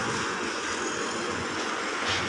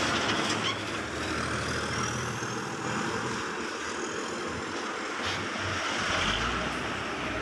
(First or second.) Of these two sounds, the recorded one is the second